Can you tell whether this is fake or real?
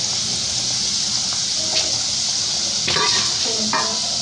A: real